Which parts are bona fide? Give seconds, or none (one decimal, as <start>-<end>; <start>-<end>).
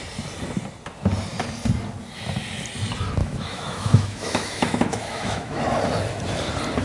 0.0-3.2; 5.6-6.8